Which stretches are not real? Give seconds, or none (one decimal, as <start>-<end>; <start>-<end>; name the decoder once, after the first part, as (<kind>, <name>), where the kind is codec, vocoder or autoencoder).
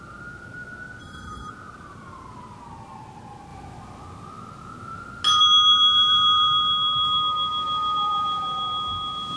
1.0-1.5 (codec, SNAC)